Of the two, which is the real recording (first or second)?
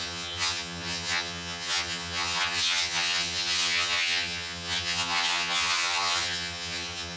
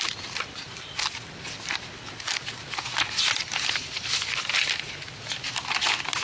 second